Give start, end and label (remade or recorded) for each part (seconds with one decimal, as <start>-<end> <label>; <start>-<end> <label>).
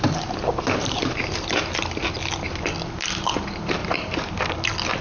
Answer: 0.0-0.8 recorded; 0.8-1.5 remade; 1.5-3.8 recorded; 3.8-4.4 remade; 4.4-5.0 recorded